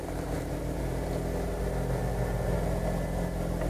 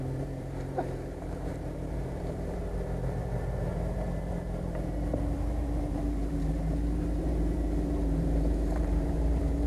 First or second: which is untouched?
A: first